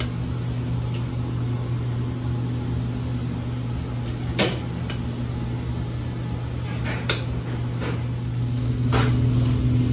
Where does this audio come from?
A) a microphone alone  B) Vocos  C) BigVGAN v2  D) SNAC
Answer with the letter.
A